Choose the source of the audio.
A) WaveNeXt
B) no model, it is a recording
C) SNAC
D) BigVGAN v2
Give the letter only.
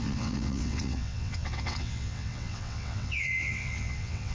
A